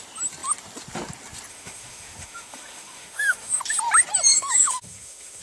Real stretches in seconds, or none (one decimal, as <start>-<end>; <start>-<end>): 0.0-1.5; 3.6-4.3